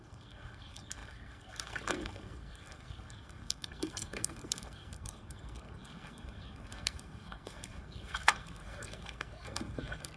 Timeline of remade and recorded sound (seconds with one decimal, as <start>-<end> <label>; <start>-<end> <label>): 0.0-10.2 remade